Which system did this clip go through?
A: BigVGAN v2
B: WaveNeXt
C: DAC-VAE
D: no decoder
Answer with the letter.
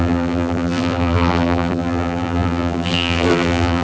A